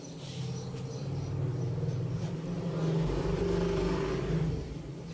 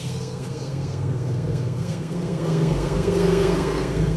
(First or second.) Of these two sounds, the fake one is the second